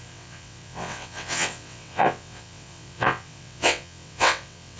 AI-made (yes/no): yes